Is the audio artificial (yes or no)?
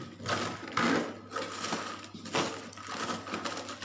no